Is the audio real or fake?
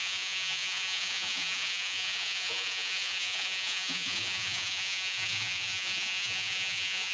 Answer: fake